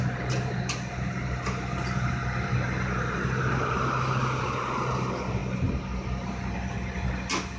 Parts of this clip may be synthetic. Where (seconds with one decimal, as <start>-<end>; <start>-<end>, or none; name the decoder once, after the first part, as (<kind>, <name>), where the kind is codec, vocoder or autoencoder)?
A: none